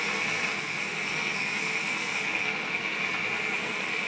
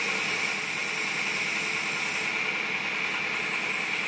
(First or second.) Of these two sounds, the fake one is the first